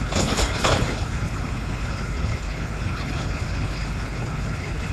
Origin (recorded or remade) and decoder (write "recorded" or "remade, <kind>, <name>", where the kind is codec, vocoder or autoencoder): remade, codec, HILCodec